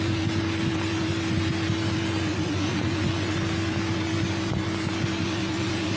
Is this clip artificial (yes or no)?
no